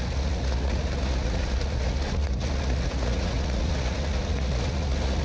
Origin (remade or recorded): remade